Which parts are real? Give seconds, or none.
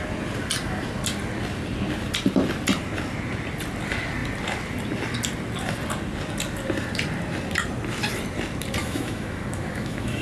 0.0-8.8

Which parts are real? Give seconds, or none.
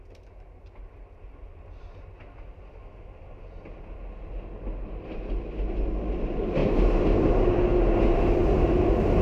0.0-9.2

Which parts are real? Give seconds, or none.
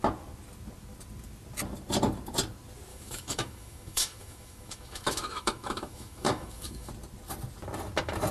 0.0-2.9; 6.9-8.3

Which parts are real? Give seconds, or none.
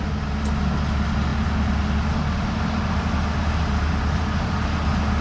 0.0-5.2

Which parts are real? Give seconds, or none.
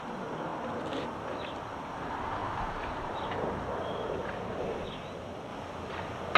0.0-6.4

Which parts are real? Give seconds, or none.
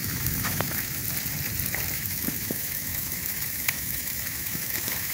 1.0-1.9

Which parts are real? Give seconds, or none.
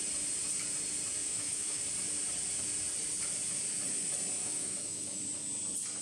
0.0-1.2; 1.8-4.4; 5.2-6.0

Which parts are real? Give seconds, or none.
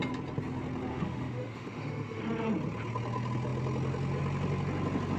0.0-0.9; 2.2-5.2